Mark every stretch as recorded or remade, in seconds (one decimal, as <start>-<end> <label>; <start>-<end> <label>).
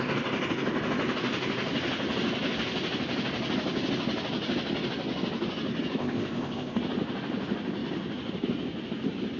0.0-6.0 recorded; 6.0-6.8 remade; 6.8-9.4 recorded